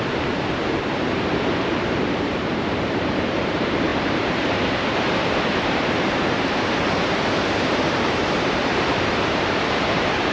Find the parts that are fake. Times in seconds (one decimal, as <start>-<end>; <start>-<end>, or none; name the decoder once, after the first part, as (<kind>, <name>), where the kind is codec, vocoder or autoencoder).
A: 0.0-10.3 (vocoder, BigVGAN v2)

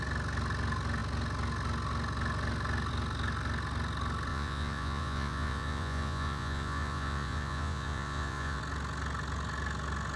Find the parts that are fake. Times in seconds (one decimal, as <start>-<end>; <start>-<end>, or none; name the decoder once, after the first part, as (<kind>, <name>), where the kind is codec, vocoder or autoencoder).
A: 4.3-8.6 (vocoder, Vocos)

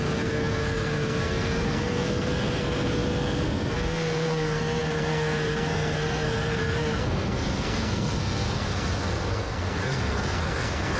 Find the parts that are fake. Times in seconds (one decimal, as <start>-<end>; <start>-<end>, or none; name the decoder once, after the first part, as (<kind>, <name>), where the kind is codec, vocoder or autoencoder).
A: 0.0-11.0 (codec, SNAC)